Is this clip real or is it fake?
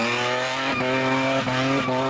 real